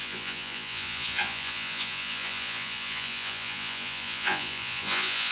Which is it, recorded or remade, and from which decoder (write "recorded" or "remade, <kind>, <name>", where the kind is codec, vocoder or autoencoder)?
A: remade, vocoder, Vocos